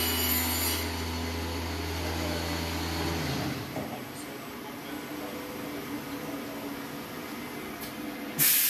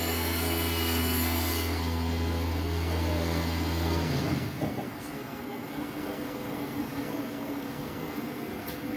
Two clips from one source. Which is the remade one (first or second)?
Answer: second